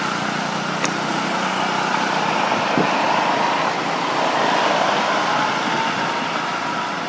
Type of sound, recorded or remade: recorded